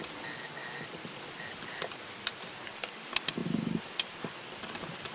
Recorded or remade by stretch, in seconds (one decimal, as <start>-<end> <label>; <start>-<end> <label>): 0.0-5.1 recorded